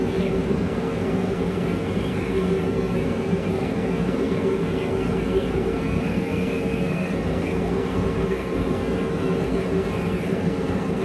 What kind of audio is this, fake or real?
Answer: fake